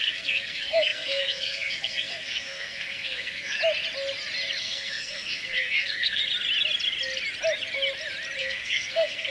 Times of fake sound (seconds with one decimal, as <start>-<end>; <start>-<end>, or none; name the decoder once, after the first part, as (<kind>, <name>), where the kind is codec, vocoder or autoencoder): 0.0-3.6 (codec, SNAC); 4.6-6.2; 8.4-9.3